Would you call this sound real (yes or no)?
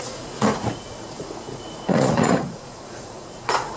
no